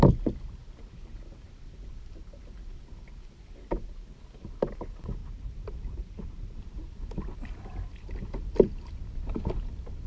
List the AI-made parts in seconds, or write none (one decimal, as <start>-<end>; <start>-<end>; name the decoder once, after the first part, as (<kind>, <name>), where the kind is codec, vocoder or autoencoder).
5.2-6.6 (vocoder, BigVGAN v2)